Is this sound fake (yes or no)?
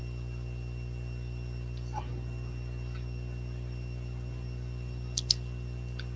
no